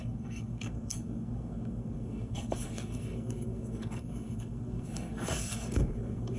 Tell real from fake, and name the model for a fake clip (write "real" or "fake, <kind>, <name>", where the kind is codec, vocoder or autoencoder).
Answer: fake, codec, SNAC